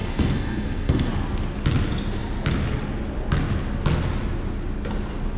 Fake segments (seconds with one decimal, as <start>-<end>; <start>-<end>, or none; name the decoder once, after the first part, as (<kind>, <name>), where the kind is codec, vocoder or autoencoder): 0.0-1.1 (codec, SNAC)